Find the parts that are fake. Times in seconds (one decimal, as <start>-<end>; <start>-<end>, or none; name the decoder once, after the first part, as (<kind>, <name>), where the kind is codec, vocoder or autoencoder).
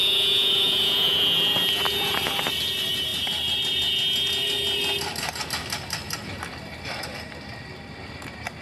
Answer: 0.0-1.2 (vocoder, Vocos)